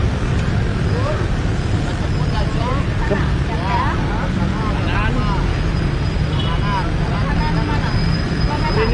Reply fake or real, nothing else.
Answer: real